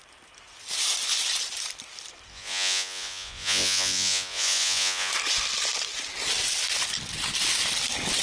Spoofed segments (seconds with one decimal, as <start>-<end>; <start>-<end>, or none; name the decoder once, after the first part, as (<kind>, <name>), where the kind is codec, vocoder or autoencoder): 2.3-5.1 (vocoder, Vocos)